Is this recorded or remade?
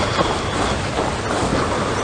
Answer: recorded